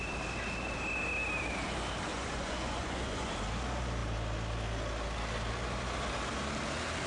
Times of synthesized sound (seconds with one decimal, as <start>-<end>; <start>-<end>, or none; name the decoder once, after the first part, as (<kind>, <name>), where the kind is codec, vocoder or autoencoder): 2.1-3.3 (vocoder, Vocos)